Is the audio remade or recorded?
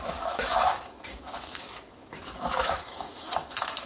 remade